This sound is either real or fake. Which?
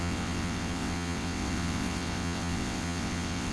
fake